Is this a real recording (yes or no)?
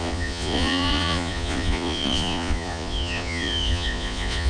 no